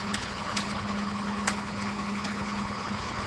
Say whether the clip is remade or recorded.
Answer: remade